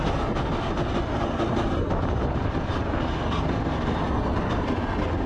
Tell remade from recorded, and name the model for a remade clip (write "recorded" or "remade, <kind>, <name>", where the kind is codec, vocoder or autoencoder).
recorded